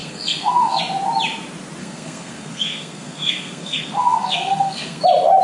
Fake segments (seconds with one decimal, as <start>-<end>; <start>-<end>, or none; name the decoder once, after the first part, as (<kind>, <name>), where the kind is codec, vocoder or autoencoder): 0.0-0.8 (codec, SNAC); 1.8-5.0